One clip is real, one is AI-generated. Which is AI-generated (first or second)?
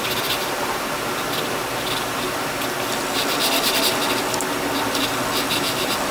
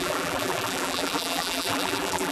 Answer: second